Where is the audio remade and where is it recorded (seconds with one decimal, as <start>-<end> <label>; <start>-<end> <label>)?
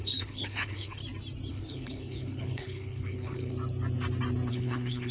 0.0-1.0 remade; 1.0-1.5 recorded; 1.5-3.5 remade; 3.5-4.5 recorded; 4.5-5.1 remade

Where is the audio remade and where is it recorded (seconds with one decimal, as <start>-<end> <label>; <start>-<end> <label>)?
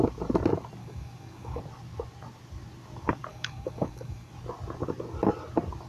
0.0-0.8 recorded; 0.8-1.6 remade; 1.6-3.3 recorded; 3.3-4.3 remade; 4.3-5.9 recorded